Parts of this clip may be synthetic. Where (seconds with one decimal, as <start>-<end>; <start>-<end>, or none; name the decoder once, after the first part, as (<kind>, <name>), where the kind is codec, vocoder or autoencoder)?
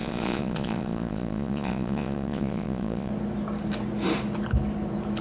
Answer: 0.0-3.1 (vocoder, Vocos)